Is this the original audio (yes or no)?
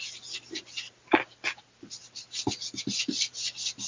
yes